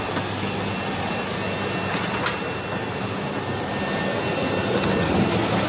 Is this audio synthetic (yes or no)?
no